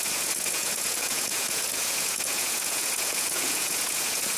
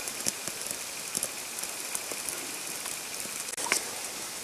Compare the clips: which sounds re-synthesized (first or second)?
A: first